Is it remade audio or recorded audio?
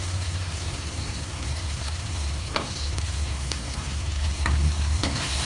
remade